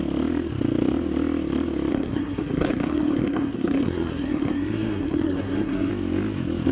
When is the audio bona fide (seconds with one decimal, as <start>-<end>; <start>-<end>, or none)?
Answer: 0.0-1.9; 5.9-6.7

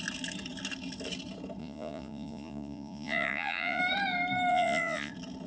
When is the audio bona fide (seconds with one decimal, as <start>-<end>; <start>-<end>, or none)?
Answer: 0.0-1.6; 3.8-4.5; 5.1-5.5